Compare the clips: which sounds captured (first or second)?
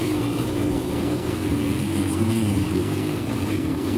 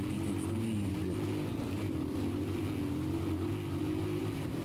second